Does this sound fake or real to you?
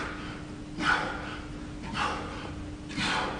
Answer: real